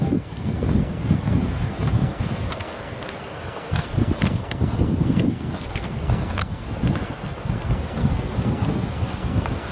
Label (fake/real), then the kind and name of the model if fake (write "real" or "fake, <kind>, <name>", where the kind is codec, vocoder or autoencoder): fake, codec, SNAC